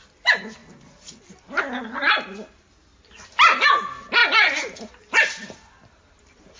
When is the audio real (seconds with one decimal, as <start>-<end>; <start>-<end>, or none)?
0.0-6.6